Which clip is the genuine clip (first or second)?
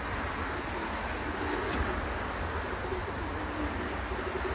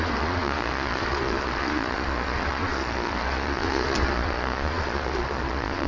first